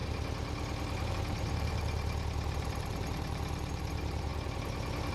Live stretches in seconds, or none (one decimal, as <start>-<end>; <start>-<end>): 0.0-1.1; 4.3-5.1